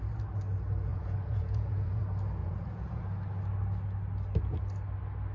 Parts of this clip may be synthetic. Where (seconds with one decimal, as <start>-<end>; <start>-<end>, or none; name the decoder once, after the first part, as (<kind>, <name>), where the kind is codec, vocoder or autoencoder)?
0.9-2.0 (vocoder, Vocos); 2.4-3.0

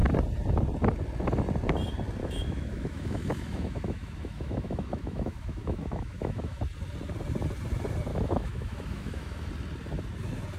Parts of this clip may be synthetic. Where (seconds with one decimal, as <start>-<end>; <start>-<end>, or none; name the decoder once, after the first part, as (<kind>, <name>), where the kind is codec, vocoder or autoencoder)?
2.2-6.6 (autoencoder, DAC-VAE); 8.1-9.5

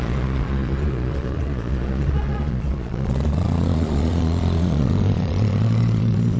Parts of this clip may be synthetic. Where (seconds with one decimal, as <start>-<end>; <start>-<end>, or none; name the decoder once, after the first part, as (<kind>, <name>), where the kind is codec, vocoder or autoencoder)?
0.0-6.4 (vocoder, Vocos)

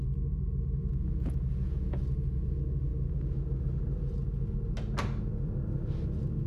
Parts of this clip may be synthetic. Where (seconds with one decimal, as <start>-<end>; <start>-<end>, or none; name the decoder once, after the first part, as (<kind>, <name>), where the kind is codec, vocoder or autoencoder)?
0.8-2.5 (vocoder, Vocos)